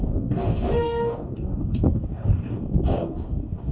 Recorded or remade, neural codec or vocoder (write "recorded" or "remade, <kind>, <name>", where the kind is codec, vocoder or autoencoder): remade, codec, DAC